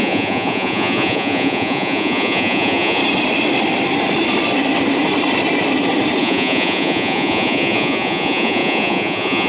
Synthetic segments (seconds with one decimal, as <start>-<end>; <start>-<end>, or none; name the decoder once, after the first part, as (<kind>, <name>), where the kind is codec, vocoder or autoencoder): 0.0-3.0 (vocoder, Vocos); 6.2-9.5